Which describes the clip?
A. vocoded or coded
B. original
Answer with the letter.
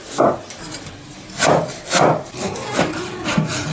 B